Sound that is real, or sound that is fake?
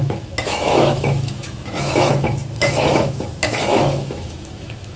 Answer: fake